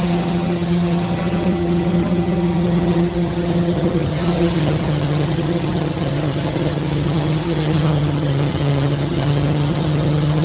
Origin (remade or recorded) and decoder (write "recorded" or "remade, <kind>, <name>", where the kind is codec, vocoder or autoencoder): remade, vocoder, HiFi-GAN